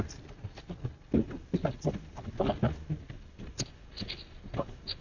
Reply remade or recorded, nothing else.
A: recorded